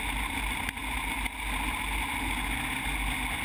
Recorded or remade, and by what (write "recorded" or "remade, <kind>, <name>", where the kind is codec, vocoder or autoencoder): recorded